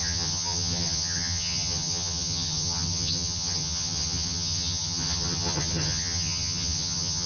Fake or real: fake